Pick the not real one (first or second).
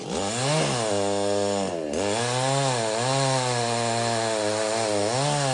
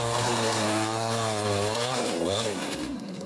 second